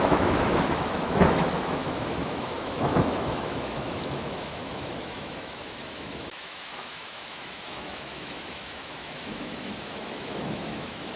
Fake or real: fake